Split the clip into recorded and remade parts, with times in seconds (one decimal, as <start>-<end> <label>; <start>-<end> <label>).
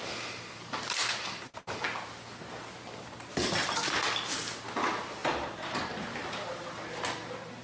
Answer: 0.0-7.6 recorded